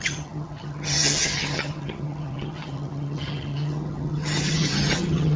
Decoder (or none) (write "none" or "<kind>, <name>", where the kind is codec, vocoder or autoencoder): vocoder, HiFi-GAN